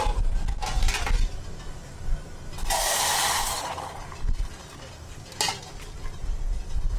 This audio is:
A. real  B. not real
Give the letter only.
A